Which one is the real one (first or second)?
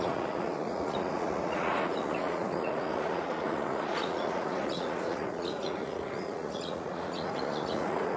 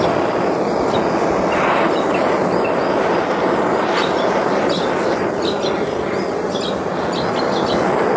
second